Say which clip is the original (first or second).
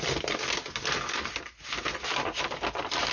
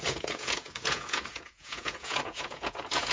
first